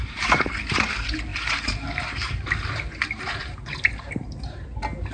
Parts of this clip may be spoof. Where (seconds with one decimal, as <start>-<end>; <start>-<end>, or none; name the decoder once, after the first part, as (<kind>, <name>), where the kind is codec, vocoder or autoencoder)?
0.0-0.9 (vocoder, BigVGAN v2); 1.3-4.2